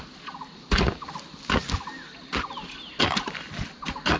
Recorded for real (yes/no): yes